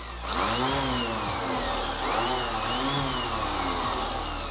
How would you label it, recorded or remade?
recorded